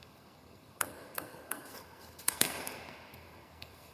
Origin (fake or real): fake